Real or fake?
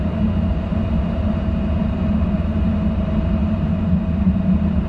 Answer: fake